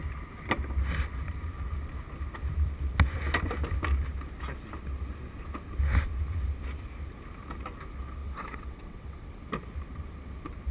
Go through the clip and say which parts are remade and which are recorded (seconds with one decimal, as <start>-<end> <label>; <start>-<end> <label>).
0.0-8.2 recorded; 8.2-9.3 remade; 9.3-10.7 recorded